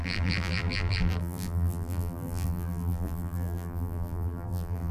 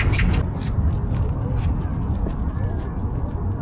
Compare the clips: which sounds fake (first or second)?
first